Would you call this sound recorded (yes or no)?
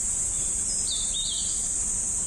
no